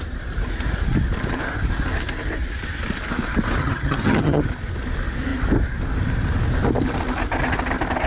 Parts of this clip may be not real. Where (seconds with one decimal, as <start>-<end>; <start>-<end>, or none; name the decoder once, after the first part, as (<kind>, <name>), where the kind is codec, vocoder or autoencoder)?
3.6-4.4 (vocoder, HiFi-GAN)

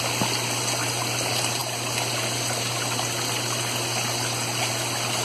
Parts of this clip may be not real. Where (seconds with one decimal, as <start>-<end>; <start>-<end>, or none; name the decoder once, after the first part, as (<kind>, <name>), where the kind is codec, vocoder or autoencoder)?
none

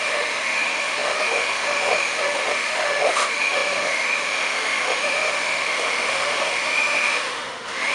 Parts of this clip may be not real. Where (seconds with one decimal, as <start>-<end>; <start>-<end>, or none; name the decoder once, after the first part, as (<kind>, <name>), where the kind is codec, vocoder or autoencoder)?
0.0-7.9 (autoencoder, DAC-VAE)